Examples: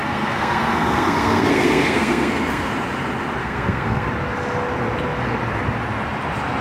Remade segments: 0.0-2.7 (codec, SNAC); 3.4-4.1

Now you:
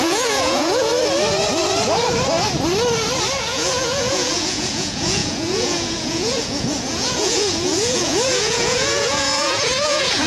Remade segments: 0.0-0.9 (vocoder, Vocos); 3.4-10.3

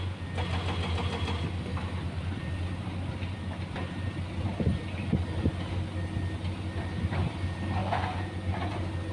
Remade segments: 7.8-8.7 (vocoder, Vocos)

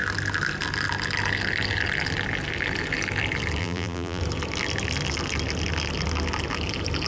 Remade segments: 3.6-4.2 (vocoder, BigVGAN v2)

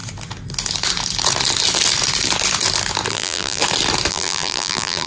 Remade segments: 3.1-3.6 (vocoder, BigVGAN v2); 4.1-5.1

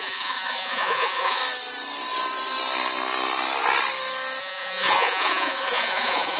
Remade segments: 0.0-1.4 (vocoder, Vocos); 4.4-6.4